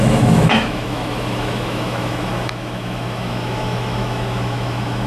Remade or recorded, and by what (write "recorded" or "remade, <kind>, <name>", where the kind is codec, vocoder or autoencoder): remade, autoencoder, DAC-VAE